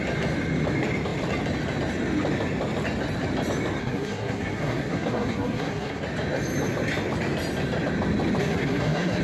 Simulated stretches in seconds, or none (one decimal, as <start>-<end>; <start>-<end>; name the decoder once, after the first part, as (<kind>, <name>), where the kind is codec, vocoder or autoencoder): 3.8-6.0 (codec, SNAC); 8.4-9.2